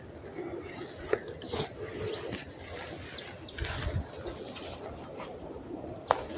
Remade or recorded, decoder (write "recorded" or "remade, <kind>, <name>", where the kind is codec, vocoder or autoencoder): recorded